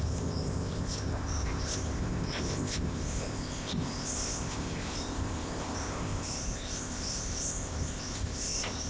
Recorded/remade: remade